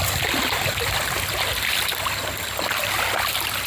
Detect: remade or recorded recorded